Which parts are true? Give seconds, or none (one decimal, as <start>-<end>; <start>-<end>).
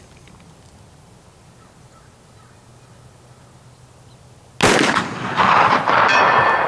0.0-6.7